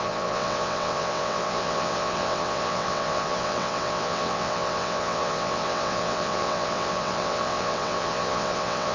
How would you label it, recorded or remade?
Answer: remade